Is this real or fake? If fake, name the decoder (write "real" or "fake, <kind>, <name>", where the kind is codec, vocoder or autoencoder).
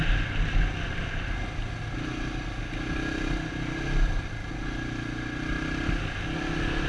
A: real